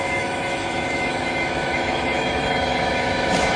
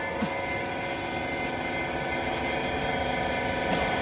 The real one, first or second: second